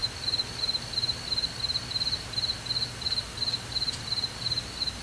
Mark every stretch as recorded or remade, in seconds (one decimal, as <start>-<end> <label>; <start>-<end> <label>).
0.0-5.0 recorded